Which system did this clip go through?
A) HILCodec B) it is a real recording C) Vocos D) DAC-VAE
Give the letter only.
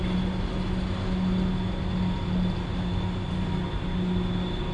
B